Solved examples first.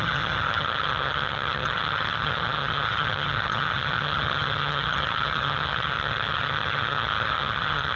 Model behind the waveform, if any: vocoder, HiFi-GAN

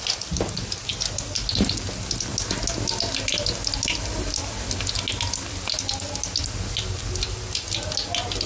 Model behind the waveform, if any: none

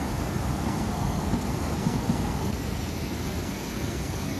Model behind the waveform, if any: codec, SNAC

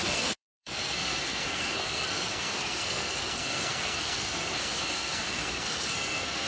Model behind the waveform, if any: codec, SNAC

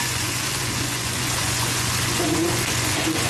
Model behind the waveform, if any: vocoder, Vocos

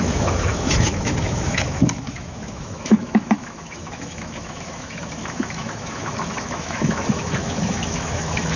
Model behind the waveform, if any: autoencoder, DAC-VAE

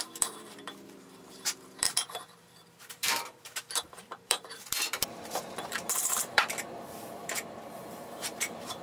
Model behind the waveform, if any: vocoder, BigVGAN v2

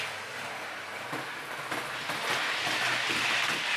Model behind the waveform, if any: none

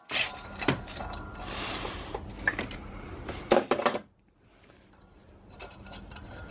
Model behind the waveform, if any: vocoder, BigVGAN v2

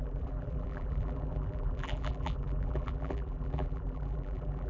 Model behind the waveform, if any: vocoder, BigVGAN v2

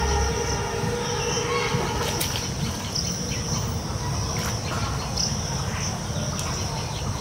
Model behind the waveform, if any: none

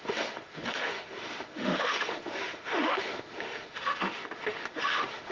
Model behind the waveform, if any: autoencoder, DAC-VAE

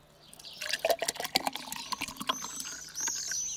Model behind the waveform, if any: none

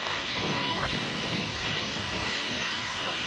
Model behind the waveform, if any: codec, DAC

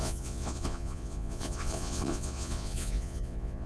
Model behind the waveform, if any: vocoder, Vocos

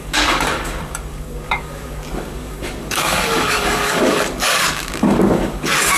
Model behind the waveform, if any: codec, DAC